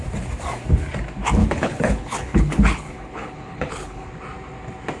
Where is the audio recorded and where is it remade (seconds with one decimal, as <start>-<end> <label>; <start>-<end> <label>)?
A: 0.0-1.4 recorded; 1.4-4.1 remade; 4.1-5.0 recorded